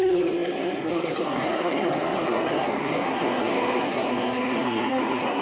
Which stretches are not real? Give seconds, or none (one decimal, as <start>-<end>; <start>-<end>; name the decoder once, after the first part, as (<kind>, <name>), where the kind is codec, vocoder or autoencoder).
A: 0.0-5.4 (codec, SNAC)